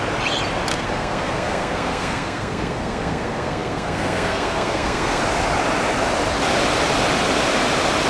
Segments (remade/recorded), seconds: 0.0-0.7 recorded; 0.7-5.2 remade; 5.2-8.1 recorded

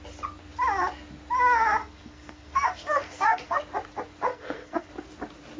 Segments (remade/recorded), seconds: 0.0-1.8 recorded; 1.8-3.6 remade; 3.6-4.3 recorded; 4.3-4.9 remade; 4.9-5.6 recorded

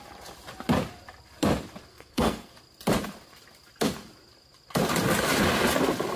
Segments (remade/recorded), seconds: 0.0-1.9 recorded; 1.9-2.5 remade; 2.5-6.2 recorded

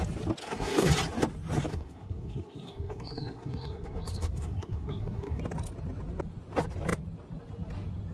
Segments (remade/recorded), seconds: 0.0-0.4 recorded; 0.4-0.9 remade; 0.9-1.7 recorded; 1.7-5.4 remade; 5.4-8.1 recorded